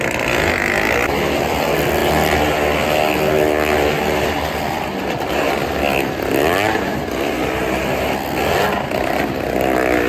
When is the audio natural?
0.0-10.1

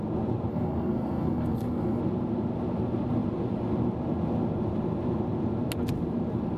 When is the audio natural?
0.0-0.5; 2.0-6.6

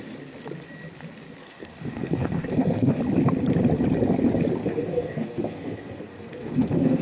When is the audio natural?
0.0-1.4; 3.0-4.6

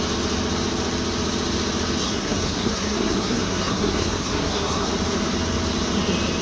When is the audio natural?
0.0-2.0; 4.9-6.4

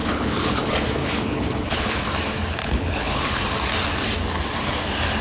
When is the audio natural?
0.6-1.0; 2.1-2.6; 3.4-5.2

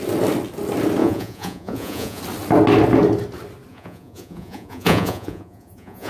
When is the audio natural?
0.0-1.0; 2.2-3.7